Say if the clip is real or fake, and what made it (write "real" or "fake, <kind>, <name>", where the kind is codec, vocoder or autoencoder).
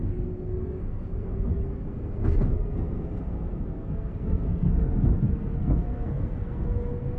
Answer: fake, codec, SNAC